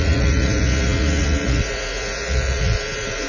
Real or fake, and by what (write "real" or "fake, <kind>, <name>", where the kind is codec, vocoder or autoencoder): fake, vocoder, Vocos